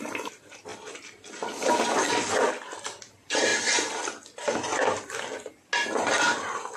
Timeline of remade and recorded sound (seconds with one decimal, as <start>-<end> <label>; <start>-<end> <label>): 0.0-6.8 recorded